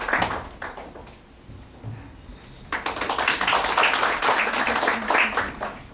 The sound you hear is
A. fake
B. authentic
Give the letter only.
B